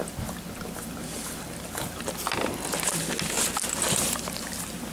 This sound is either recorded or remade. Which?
recorded